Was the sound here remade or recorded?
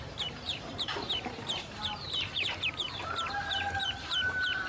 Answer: remade